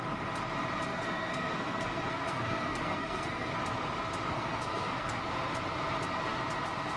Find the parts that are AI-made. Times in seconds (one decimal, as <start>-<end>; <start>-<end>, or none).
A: 0.9-3.5; 4.3-5.2